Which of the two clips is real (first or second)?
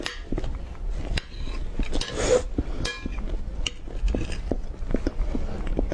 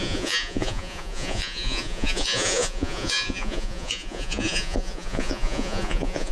first